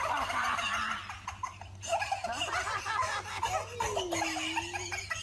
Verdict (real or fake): real